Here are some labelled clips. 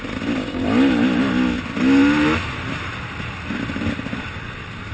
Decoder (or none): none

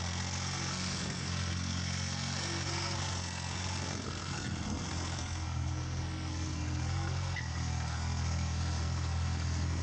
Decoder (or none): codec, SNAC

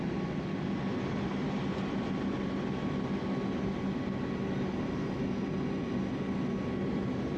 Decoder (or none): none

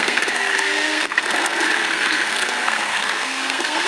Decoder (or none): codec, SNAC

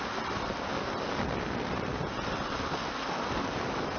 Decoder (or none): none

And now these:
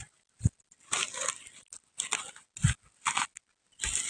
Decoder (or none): none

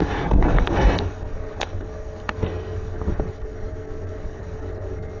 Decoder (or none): codec, SNAC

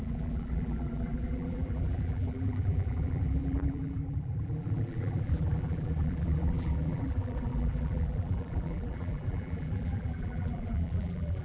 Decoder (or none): vocoder, BigVGAN v2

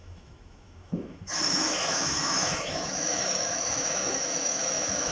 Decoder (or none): autoencoder, DAC-VAE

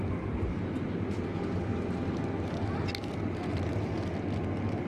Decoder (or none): none